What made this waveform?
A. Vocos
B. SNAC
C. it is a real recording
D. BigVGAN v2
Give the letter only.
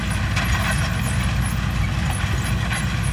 C